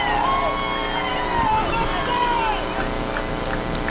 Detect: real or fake real